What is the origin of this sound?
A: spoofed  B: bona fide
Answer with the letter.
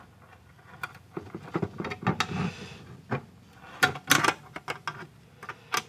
B